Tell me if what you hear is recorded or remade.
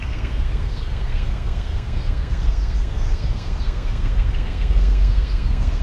remade